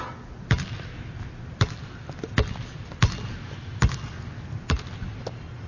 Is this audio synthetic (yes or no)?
no